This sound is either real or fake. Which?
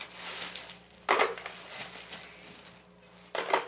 real